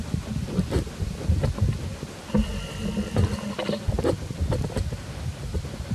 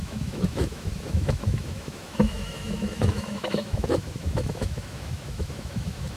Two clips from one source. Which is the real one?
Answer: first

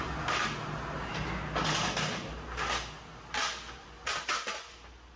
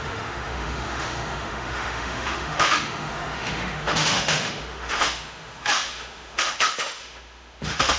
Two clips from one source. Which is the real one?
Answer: first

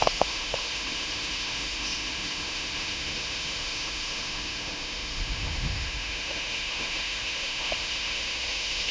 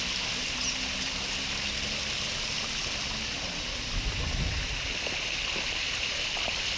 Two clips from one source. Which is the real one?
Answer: second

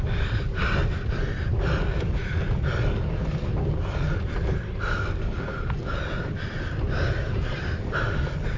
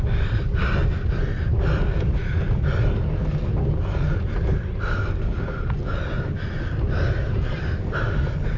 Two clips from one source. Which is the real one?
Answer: second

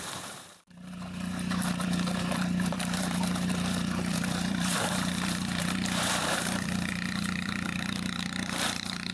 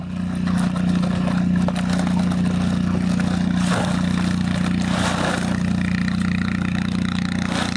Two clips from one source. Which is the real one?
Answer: second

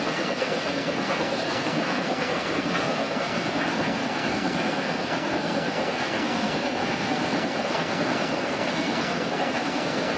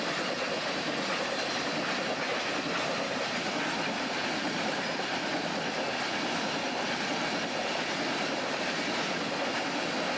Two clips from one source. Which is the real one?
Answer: second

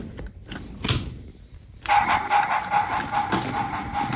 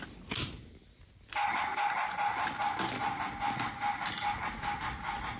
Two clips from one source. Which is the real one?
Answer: second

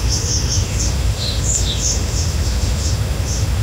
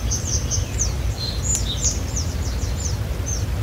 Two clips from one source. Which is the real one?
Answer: second